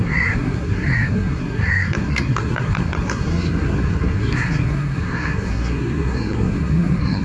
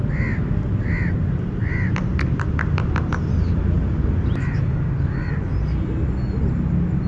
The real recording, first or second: second